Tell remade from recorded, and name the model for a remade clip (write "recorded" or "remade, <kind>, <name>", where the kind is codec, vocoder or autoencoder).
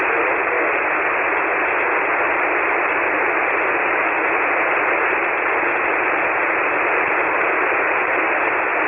recorded